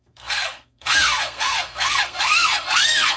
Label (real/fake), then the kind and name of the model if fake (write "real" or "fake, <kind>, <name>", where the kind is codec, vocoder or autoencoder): fake, codec, SNAC